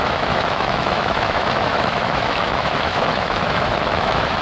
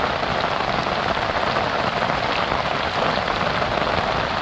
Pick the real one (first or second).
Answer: second